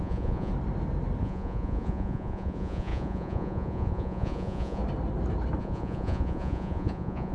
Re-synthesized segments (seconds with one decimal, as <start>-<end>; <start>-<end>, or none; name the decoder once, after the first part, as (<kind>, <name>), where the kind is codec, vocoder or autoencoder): 0.0-0.5 (vocoder, Vocos); 1.2-4.8; 5.6-7.3